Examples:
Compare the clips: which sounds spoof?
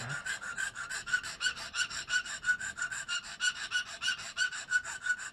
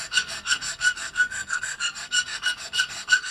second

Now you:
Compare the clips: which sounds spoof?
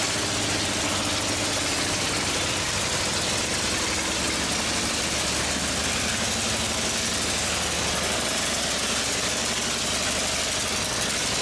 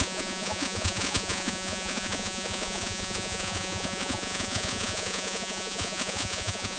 second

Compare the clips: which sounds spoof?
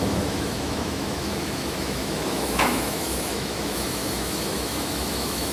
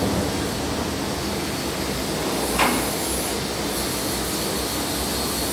first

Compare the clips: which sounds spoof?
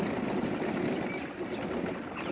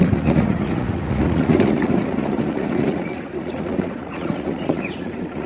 second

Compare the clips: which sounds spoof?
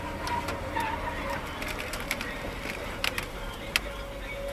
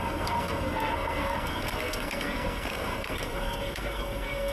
second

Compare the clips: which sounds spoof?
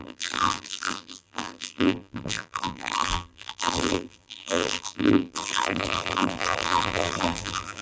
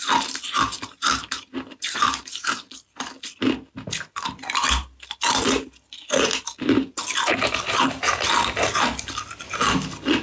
first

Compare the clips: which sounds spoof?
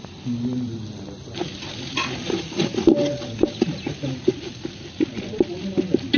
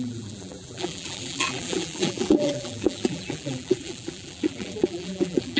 second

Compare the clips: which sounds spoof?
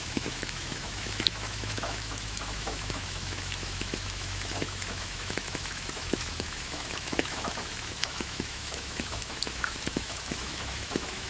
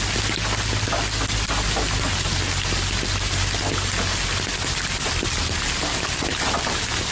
first